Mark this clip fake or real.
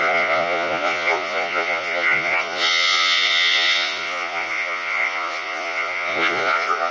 fake